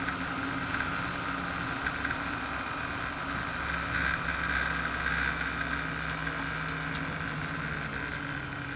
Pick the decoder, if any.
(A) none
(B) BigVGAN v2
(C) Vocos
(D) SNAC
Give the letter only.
A